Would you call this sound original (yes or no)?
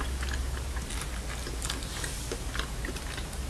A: yes